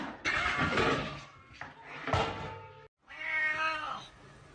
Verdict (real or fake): real